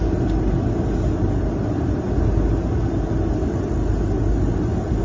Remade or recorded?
recorded